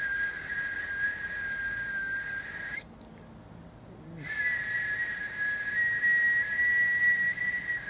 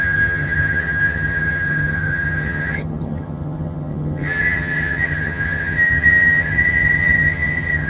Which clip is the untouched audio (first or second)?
first